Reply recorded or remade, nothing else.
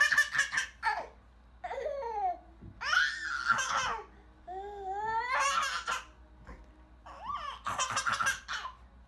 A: recorded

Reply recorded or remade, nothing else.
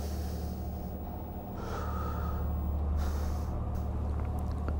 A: recorded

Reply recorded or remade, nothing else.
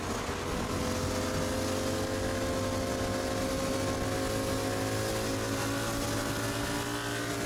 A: recorded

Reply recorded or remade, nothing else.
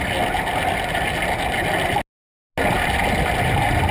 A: recorded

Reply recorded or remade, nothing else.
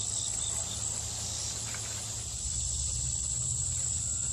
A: recorded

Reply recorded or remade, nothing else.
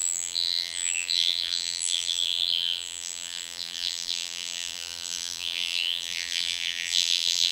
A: remade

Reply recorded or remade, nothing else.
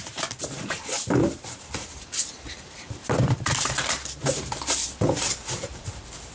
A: remade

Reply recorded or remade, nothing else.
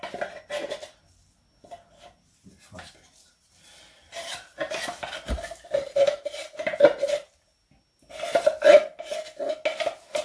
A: recorded